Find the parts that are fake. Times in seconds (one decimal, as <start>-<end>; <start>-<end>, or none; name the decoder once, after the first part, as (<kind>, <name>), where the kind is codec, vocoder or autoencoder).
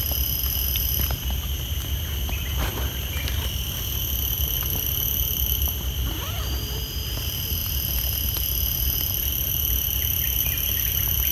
none